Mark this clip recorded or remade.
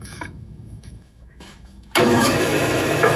remade